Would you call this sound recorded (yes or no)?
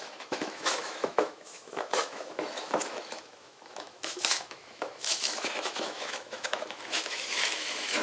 no